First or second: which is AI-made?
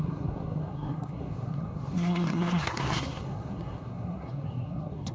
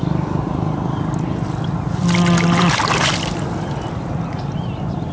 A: first